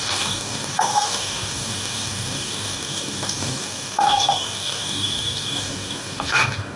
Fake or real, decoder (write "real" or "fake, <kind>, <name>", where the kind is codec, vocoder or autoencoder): fake, codec, DAC